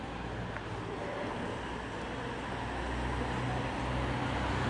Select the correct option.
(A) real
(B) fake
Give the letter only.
A